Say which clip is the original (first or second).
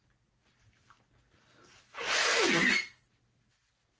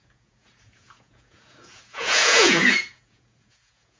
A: first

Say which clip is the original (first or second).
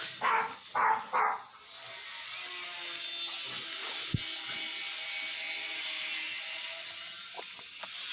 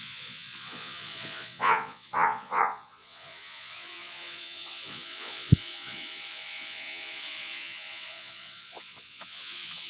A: first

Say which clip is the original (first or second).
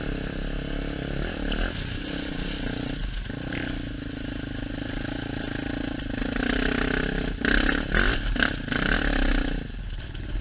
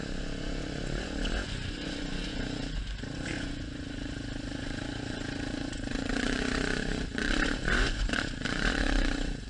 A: first